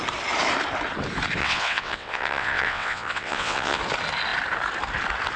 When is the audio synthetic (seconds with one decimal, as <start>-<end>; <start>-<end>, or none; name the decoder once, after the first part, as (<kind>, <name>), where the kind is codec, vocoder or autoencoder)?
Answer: 1.4-3.8 (vocoder, WaveNeXt)